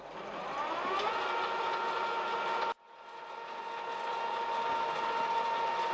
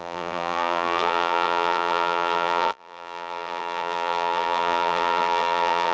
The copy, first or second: second